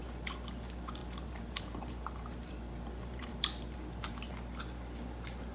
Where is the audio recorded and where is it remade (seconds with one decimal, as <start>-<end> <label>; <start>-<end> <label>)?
0.0-1.0 recorded; 1.0-4.3 remade; 4.3-5.5 recorded